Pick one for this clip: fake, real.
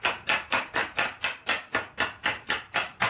real